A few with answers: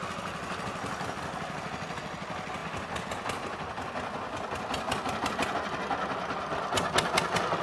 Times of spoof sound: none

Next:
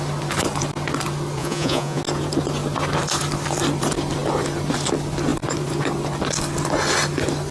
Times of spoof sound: 1.4-2.0 (vocoder, Vocos)

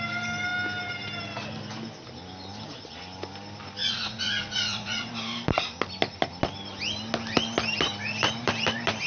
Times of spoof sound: 3.8-5.1 (vocoder, Vocos)

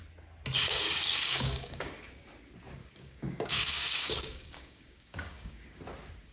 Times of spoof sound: 0.6-2.2 (codec, DAC); 2.8-5.8

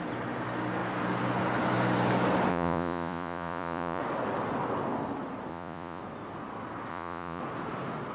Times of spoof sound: 2.5-4.0 (vocoder, Vocos); 5.5-6.0; 6.9-7.4

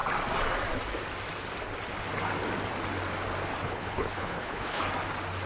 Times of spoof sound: 3.6-4.8 (codec, HILCodec)